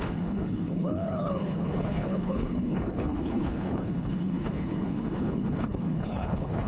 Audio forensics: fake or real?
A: fake